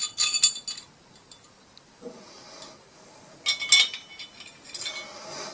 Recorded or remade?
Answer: recorded